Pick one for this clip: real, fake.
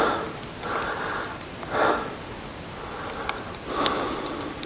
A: real